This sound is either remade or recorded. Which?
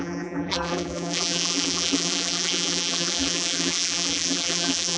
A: remade